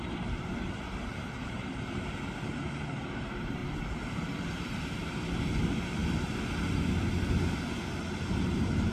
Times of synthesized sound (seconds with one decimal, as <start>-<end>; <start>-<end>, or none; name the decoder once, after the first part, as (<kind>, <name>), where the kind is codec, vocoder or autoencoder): 0.0-3.6 (vocoder, BigVGAN v2); 5.0-6.0; 8.5-8.9

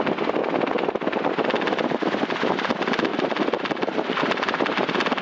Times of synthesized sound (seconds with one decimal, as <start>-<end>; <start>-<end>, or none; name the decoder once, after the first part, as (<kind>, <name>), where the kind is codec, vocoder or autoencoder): 3.1-4.2 (vocoder, BigVGAN v2)

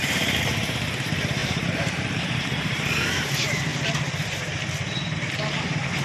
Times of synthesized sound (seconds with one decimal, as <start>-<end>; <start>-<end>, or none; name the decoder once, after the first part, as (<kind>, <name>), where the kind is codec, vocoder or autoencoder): 0.0-3.7 (vocoder, BigVGAN v2); 5.6-6.0